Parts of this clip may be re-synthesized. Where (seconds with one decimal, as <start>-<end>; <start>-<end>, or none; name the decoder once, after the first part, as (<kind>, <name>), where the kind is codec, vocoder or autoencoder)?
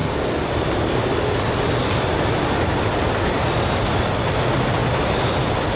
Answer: none